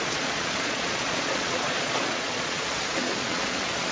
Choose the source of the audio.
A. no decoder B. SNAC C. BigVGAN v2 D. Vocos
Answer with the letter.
D